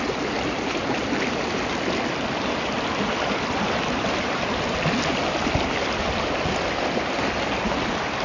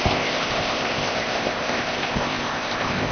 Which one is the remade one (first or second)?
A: second